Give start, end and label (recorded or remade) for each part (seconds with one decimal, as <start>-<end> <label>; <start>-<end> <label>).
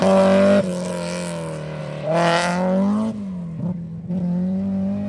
0.0-0.7 remade; 0.7-1.8 recorded; 1.8-2.5 remade; 2.5-4.1 recorded; 4.1-5.1 remade